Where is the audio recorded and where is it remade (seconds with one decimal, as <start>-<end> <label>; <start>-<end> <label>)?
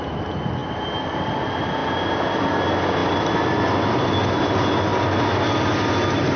0.0-6.4 recorded